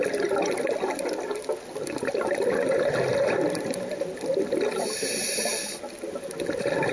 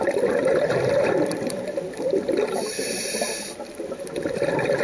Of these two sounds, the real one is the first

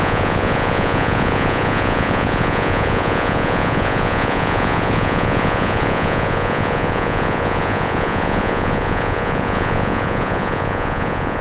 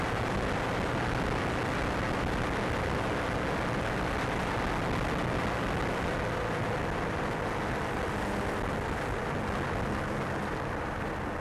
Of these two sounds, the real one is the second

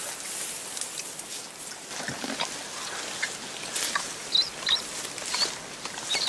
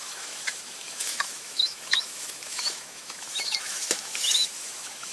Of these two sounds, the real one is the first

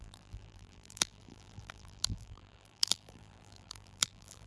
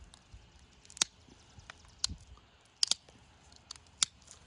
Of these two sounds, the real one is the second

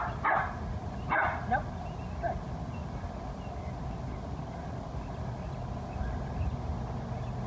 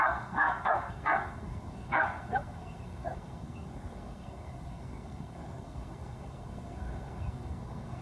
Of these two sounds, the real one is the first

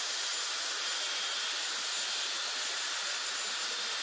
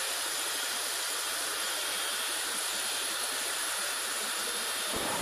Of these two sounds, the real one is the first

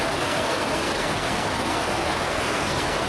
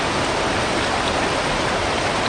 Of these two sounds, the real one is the second